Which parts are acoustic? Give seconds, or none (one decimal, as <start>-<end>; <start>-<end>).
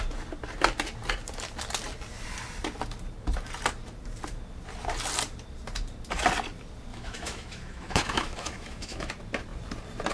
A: 0.0-6.9; 9.1-10.1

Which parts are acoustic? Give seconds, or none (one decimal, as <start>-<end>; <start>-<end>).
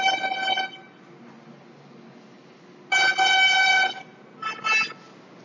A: 0.0-5.4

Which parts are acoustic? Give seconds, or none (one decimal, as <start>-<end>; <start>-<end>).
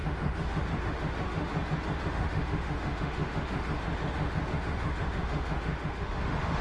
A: 1.5-2.1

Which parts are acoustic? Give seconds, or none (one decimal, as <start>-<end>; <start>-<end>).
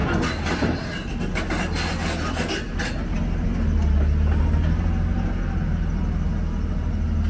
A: 0.0-7.3